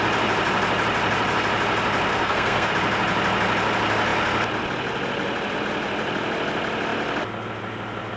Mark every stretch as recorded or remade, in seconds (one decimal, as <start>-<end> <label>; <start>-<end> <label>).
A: 0.0-2.1 recorded; 2.1-2.7 remade; 2.7-8.2 recorded